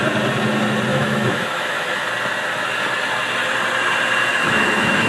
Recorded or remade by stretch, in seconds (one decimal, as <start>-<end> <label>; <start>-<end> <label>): 0.0-0.9 recorded; 0.9-2.1 remade; 2.1-4.3 recorded; 4.3-5.1 remade

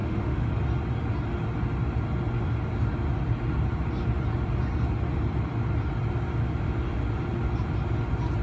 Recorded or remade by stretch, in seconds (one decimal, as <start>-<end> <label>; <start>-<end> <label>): 0.0-0.5 remade; 0.5-8.4 recorded

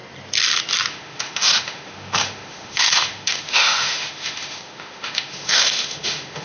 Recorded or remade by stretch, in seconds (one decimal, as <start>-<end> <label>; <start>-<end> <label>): 0.0-0.9 recorded; 0.9-6.4 remade